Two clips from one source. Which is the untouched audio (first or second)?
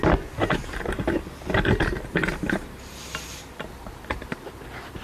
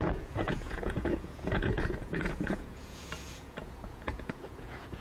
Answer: first